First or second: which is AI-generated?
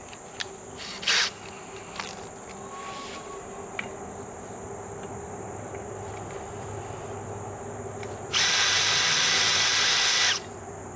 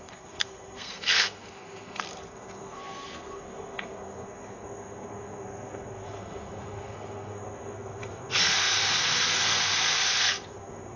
second